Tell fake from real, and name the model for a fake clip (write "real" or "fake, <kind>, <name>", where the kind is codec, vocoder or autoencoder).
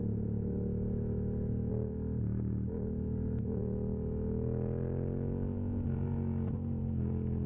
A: real